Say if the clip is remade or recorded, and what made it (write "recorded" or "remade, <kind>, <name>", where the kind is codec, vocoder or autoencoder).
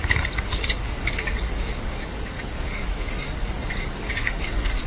remade, codec, DAC